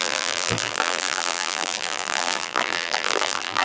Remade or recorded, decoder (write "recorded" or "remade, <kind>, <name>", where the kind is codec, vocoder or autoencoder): remade, vocoder, BigVGAN v2